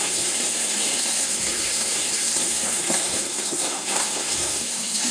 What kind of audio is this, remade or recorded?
remade